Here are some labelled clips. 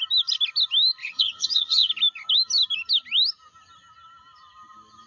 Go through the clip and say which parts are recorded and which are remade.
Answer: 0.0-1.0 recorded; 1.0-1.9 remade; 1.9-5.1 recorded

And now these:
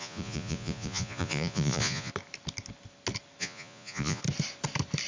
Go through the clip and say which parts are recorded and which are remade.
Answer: 0.0-2.1 remade; 2.1-3.4 recorded; 3.4-4.2 remade; 4.2-5.1 recorded

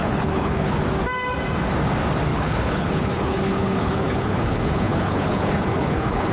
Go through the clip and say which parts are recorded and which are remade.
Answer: 0.0-0.8 remade; 0.8-2.3 recorded; 2.3-6.3 remade

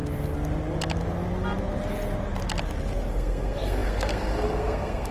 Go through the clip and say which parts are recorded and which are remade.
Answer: 0.0-3.1 recorded; 3.1-5.1 remade

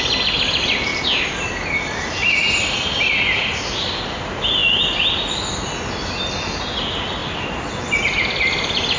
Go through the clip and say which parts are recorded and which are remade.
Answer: 0.0-9.0 recorded